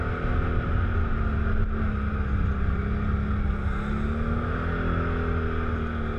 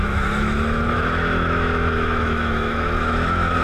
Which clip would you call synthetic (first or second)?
second